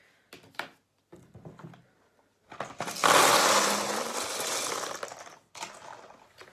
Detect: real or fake real